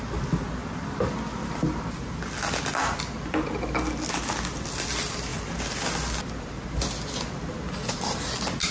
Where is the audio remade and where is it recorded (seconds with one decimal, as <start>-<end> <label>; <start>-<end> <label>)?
0.0-8.7 recorded